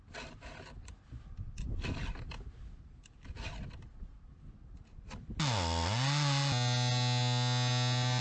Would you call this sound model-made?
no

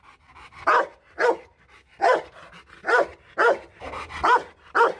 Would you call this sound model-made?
no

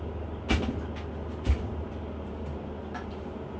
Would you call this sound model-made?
no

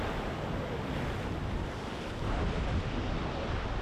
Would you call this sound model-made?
no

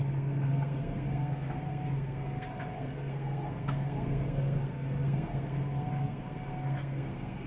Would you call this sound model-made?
yes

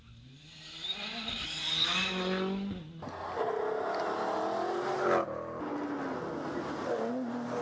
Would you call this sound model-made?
no